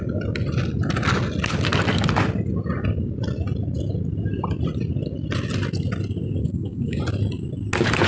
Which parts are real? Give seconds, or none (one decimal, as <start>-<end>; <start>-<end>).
0.0-6.4; 7.0-8.1